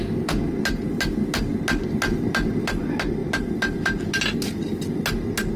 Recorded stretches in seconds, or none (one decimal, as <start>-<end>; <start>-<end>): 0.0-5.6